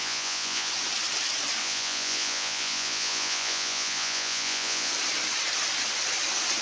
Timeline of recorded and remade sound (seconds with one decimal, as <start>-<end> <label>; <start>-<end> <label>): 0.0-0.7 remade; 0.7-1.6 recorded; 1.6-4.9 remade; 4.9-6.6 recorded